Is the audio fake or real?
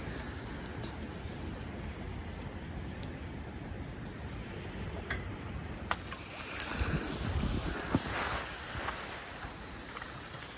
real